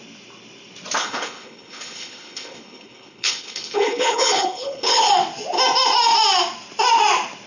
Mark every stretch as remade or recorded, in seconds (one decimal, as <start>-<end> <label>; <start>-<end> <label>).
0.0-1.0 recorded; 1.0-5.1 remade; 5.1-7.5 recorded